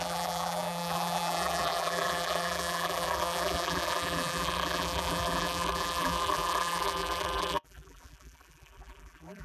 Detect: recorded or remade remade